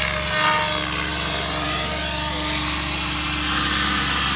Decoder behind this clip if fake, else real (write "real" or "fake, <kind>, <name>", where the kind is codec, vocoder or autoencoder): real